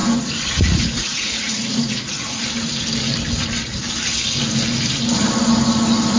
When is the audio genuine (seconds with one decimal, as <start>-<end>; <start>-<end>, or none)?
2.4-6.2